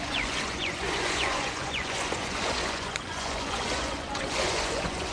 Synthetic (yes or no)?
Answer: yes